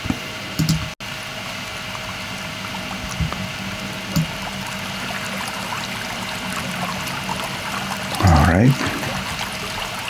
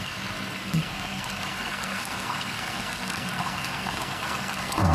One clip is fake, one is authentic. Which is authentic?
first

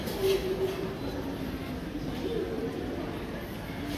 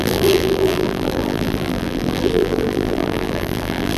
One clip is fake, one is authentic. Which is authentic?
first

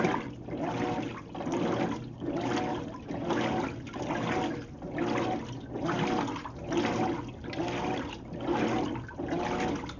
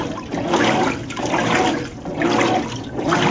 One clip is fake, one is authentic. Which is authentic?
first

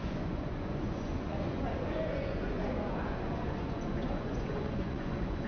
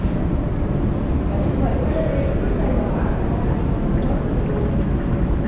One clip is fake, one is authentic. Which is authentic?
second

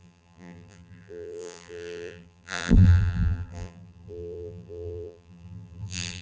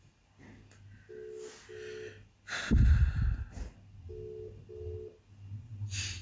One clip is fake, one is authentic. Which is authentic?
second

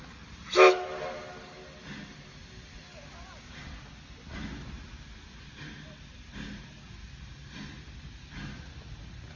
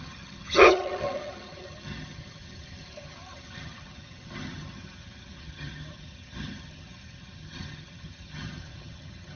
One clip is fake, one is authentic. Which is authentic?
first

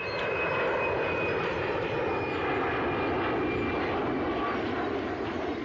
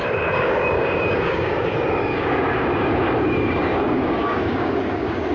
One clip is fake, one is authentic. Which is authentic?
first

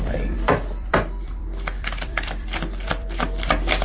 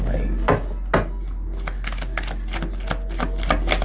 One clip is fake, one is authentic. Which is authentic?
second